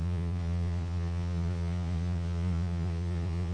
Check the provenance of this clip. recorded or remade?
remade